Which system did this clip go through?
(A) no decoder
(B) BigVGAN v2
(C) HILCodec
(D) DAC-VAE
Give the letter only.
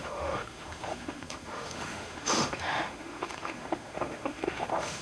D